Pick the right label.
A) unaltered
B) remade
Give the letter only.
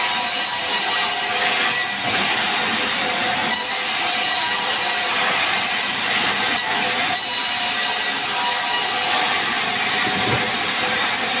A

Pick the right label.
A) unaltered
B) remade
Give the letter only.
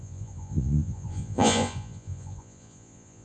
B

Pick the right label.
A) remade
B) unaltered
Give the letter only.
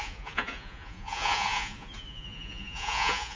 A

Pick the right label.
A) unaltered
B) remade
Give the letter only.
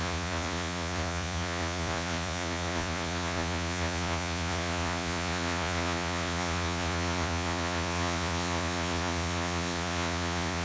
B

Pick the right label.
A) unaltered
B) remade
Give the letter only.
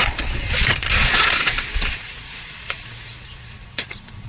B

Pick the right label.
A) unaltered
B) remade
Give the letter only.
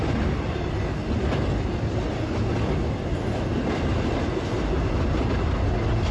A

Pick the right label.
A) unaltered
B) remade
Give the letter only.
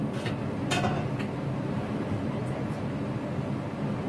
A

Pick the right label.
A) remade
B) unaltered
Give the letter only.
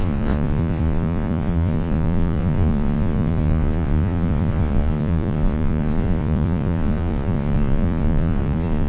A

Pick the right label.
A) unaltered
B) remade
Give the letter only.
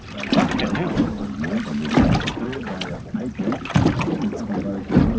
A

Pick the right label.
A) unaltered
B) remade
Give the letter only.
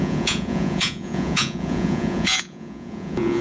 B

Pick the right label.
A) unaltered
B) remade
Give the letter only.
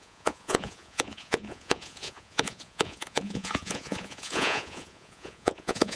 B